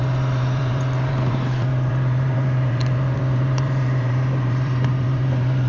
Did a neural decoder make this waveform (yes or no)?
yes